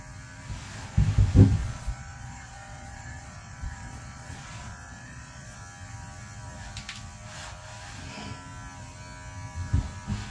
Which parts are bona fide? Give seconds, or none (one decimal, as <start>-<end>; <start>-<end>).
0.0-1.6; 5.6-10.3